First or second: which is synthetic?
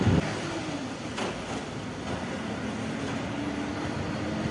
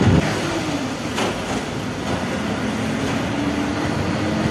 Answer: first